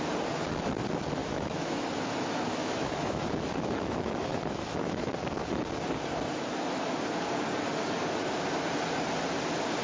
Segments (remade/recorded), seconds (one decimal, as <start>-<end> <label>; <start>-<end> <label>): 0.0-1.2 recorded; 1.2-5.1 remade; 5.1-9.8 recorded